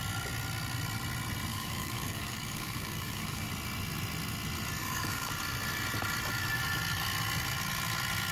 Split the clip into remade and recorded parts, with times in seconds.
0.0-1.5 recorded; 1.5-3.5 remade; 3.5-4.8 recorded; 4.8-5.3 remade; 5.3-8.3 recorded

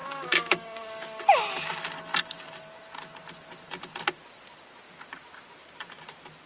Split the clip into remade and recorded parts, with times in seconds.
0.0-1.2 remade; 1.2-6.5 recorded